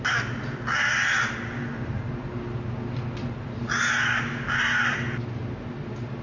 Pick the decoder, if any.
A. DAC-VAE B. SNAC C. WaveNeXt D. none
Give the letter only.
D